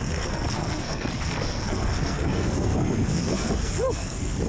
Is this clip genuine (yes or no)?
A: no